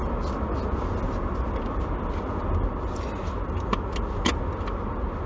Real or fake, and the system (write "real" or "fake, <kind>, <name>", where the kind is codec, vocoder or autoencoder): real